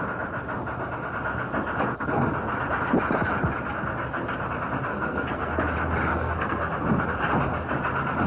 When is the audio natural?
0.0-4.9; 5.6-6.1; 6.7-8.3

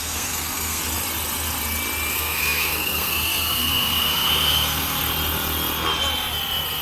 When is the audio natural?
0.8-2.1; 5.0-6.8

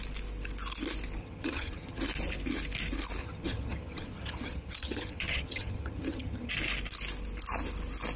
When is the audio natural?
0.0-1.2; 2.0-3.2; 6.5-8.2

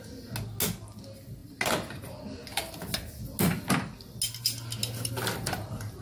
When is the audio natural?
0.0-6.0